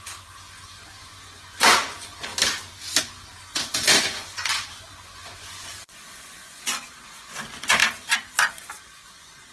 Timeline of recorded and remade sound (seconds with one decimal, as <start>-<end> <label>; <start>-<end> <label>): 0.0-2.3 remade; 2.3-3.0 recorded; 3.0-7.8 remade; 7.8-8.5 recorded; 8.5-9.5 remade